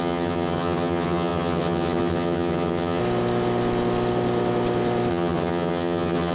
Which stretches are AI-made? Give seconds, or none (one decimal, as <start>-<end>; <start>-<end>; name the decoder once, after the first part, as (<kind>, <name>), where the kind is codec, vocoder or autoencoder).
0.0-3.0 (vocoder, HiFi-GAN); 5.1-6.3